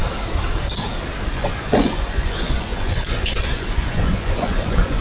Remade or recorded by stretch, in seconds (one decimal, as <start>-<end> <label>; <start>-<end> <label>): 0.0-1.3 recorded; 1.3-5.0 remade